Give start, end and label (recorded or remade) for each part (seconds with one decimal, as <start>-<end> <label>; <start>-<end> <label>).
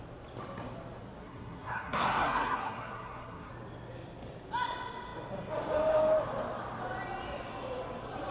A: 0.0-1.2 recorded; 1.2-3.5 remade; 3.5-8.3 recorded